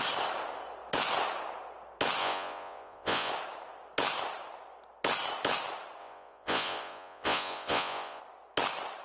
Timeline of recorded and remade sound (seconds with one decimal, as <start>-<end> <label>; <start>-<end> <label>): 0.0-2.2 recorded; 2.2-3.3 remade; 3.3-6.0 recorded; 6.0-8.2 remade; 8.2-9.0 recorded